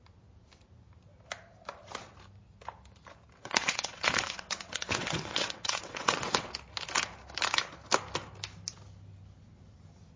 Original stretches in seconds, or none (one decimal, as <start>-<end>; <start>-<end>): 0.0-3.4; 6.5-10.2